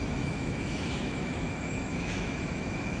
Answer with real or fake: fake